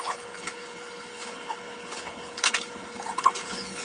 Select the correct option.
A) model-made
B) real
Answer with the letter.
A